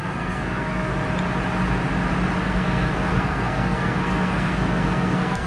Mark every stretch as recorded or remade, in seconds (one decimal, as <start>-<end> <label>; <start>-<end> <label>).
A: 0.0-0.9 remade; 0.9-2.4 recorded; 2.4-5.5 remade